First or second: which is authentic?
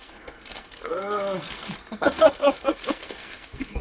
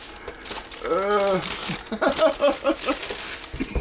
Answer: second